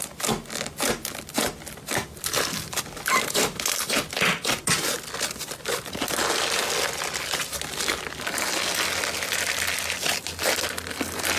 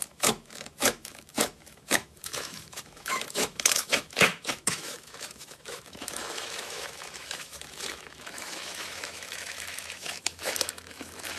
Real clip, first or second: first